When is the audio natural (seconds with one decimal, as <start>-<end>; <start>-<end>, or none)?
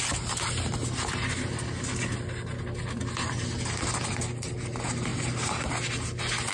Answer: 0.0-5.1; 5.7-6.5